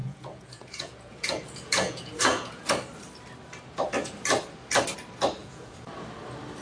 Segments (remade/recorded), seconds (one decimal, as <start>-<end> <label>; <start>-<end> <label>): 0.0-2.7 remade; 2.7-5.4 recorded; 5.4-5.9 remade; 5.9-6.6 recorded